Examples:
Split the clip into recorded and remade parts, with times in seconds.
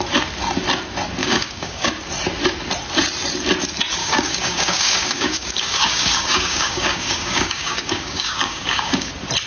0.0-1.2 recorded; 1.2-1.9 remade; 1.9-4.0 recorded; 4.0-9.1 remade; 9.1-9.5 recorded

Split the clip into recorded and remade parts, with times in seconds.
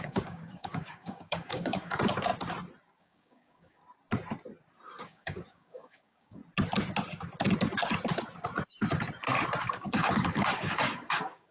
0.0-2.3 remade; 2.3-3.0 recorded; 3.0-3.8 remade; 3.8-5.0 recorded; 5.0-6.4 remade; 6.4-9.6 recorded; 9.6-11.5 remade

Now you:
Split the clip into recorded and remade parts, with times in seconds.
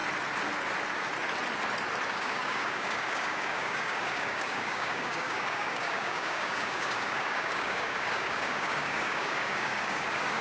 0.0-2.1 recorded; 2.1-10.4 remade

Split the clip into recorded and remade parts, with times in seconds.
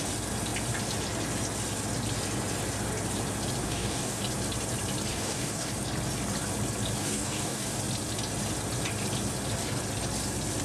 0.0-3.6 recorded; 3.6-4.2 remade; 4.2-5.1 recorded; 5.1-5.7 remade; 5.7-7.0 recorded; 7.0-7.8 remade; 7.8-10.6 recorded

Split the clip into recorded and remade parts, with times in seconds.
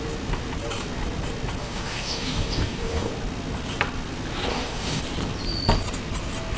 0.0-1.6 recorded; 1.6-3.1 remade; 3.1-4.5 recorded; 4.5-5.0 remade; 5.0-6.6 recorded